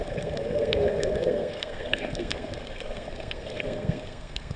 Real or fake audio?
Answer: fake